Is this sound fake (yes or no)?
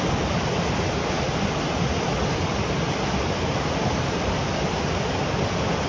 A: no